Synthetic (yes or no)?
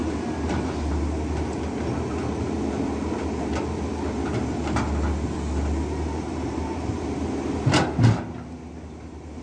no